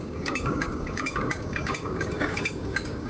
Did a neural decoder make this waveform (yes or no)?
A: yes